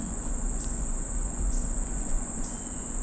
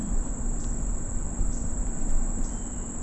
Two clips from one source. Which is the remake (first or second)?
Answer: first